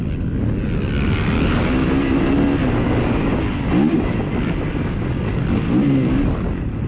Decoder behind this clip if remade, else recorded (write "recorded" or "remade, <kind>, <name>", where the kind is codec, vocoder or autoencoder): recorded